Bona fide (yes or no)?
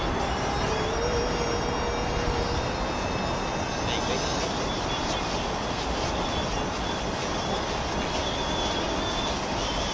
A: yes